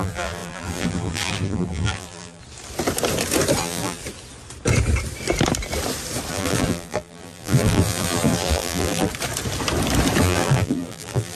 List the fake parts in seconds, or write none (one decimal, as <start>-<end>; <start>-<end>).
0.0-2.4; 3.6-4.0; 6.3-9.1; 10.2-11.3